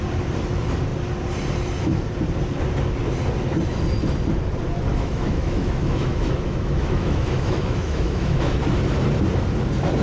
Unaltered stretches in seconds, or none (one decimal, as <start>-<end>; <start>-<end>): 0.0-4.9; 8.6-10.0